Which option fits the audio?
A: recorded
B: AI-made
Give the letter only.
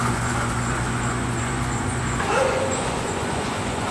B